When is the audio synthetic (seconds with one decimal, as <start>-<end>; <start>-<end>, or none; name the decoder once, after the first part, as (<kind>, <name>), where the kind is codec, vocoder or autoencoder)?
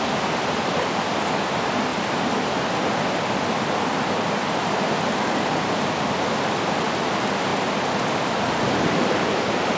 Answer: none